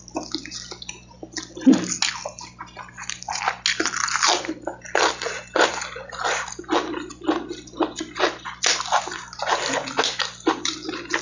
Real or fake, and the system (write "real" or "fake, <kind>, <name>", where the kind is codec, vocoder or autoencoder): real